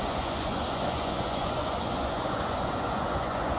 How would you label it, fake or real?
fake